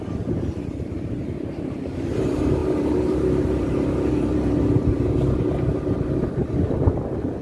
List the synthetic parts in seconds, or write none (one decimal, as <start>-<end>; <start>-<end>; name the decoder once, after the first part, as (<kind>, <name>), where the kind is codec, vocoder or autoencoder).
2.6-4.7 (vocoder, BigVGAN v2)